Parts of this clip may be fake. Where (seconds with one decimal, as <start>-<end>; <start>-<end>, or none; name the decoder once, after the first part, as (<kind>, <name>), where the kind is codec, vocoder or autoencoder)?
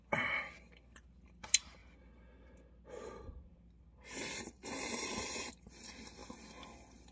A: none